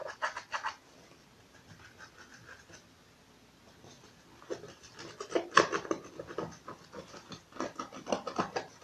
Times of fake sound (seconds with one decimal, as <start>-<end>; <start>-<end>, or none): none

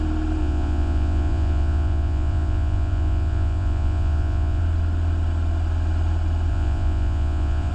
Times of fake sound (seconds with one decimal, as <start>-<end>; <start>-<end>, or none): 0.4-4.6; 6.5-7.7

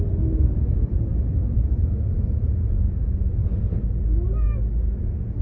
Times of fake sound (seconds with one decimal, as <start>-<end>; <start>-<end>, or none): 0.0-3.4; 5.0-5.4

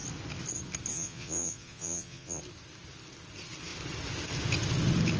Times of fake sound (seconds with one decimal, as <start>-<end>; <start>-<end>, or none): 0.9-2.4

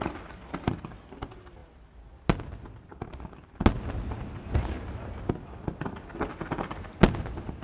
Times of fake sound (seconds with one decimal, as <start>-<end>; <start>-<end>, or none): none

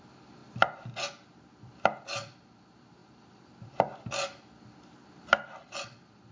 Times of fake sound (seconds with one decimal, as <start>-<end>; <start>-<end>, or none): none

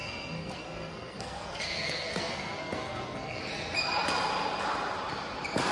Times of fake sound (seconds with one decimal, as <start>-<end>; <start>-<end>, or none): 0.0-3.4